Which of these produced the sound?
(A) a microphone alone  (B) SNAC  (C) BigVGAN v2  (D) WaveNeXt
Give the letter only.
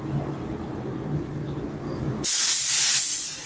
A